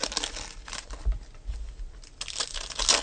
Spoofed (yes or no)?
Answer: no